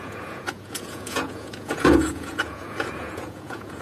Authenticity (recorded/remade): remade